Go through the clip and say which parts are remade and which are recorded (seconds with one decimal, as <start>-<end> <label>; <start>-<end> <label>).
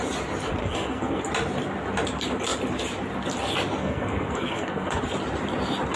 0.0-0.6 recorded; 0.6-1.2 remade; 1.2-3.8 recorded; 3.8-5.0 remade; 5.0-6.0 recorded